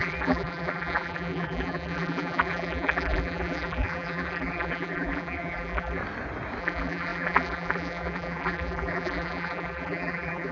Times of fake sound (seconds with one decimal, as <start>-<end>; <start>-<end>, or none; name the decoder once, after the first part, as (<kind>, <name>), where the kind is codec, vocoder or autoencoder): 0.0-6.0 (vocoder, BigVGAN v2); 6.6-10.5